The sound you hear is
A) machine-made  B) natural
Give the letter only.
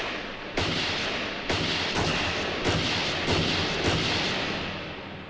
B